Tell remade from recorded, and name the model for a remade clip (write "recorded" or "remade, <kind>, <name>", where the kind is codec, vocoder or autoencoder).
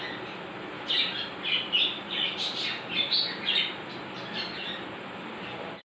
recorded